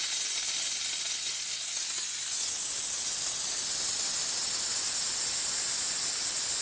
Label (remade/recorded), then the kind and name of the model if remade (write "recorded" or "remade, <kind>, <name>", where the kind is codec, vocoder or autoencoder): recorded